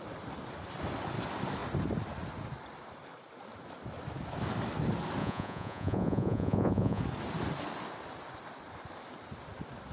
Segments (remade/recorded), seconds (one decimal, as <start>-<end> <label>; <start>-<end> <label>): 0.0-5.2 recorded; 5.2-7.0 remade; 7.0-9.9 recorded